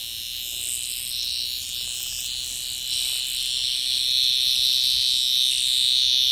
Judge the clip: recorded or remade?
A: recorded